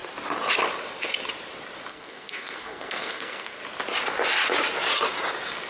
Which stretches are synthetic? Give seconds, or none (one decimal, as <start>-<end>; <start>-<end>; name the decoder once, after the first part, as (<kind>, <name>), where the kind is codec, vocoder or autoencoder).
1.9-3.6 (codec, SNAC)